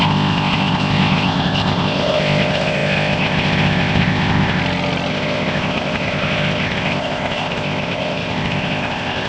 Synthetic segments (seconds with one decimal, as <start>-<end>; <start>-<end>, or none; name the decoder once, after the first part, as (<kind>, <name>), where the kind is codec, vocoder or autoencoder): 0.0-4.6 (codec, ZipCodec); 5.1-9.3